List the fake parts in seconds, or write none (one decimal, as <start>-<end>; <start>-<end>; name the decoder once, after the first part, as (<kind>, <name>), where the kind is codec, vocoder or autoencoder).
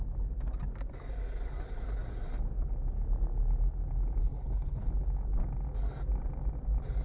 4.2-4.9 (codec, HILCodec)